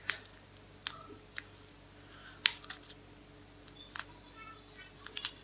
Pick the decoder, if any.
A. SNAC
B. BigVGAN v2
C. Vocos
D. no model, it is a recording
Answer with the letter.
D